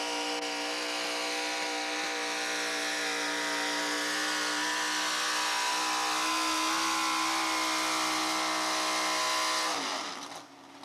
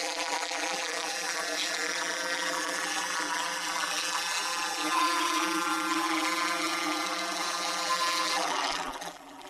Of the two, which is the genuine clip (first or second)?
first